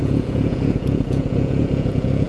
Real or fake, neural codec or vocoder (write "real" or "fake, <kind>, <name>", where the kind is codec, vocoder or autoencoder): fake, vocoder, Vocos